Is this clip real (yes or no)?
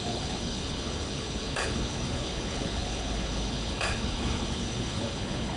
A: no